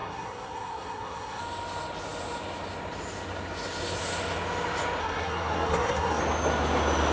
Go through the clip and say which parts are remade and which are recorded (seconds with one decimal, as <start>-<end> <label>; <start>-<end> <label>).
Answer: 0.0-1.4 remade; 1.4-5.0 recorded; 5.0-6.2 remade; 6.2-7.1 recorded